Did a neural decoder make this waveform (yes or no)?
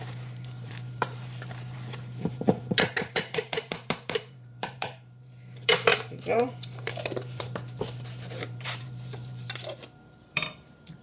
yes